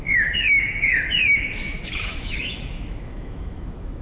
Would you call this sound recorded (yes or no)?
no